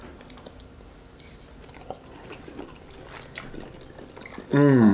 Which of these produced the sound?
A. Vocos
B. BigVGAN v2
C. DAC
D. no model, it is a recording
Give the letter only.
D